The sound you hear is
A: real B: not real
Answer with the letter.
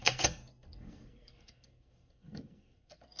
B